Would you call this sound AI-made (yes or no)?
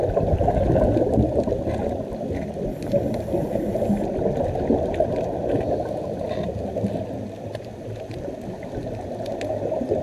no